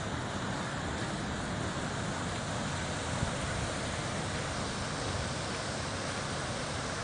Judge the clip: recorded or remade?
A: recorded